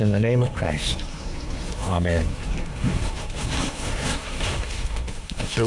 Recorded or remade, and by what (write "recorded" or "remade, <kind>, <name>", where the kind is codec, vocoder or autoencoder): remade, codec, SNAC